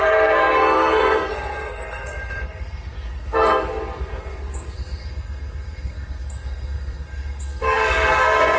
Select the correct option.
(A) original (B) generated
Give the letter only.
B